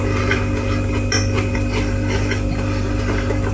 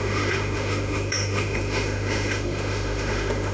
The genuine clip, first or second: first